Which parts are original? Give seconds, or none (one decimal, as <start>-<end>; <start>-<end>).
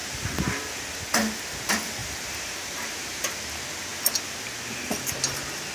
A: 0.8-2.0; 3.4-5.7